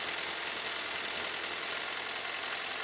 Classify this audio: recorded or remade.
recorded